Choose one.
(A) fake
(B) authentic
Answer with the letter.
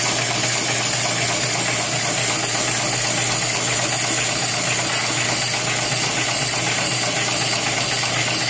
B